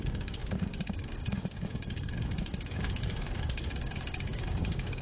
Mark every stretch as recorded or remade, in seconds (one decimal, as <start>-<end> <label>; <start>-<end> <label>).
0.0-5.0 remade